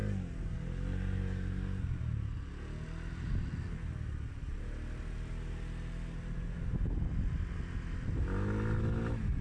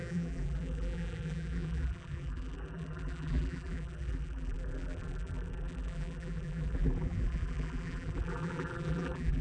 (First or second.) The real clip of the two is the first